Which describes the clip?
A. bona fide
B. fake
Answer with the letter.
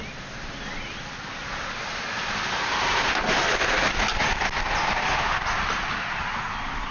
A